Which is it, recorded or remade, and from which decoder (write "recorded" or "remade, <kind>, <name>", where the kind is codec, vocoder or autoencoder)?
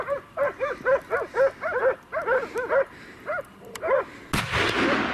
recorded